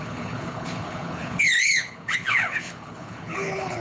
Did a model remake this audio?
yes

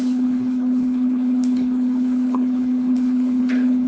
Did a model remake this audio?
yes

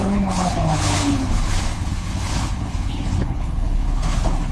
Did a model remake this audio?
yes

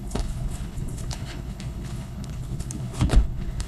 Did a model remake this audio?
yes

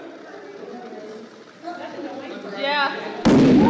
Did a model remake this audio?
no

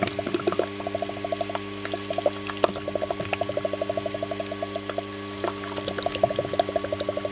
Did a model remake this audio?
no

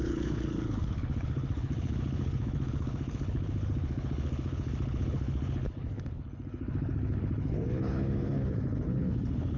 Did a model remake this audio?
yes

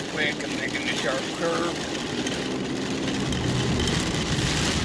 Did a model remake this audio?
no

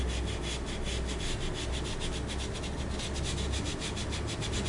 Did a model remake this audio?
no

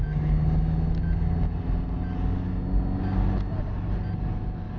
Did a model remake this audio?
no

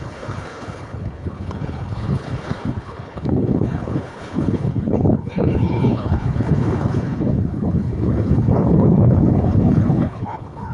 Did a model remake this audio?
yes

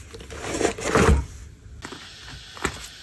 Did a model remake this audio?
no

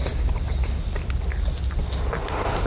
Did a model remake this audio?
no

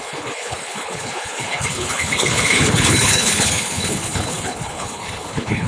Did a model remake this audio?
yes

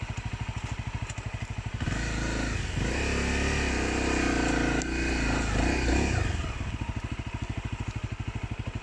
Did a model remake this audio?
no